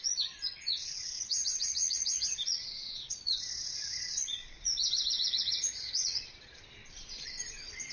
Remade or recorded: remade